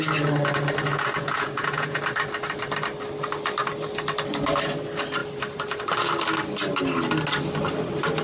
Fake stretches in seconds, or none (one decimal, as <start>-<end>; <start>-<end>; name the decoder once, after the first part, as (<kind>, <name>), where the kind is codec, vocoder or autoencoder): 0.9-2.0 (vocoder, Vocos)